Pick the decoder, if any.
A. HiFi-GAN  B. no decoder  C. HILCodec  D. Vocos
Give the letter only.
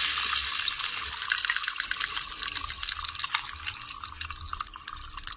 B